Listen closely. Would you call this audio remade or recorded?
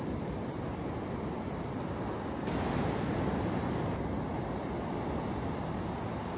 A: recorded